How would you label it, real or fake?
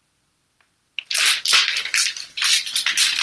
real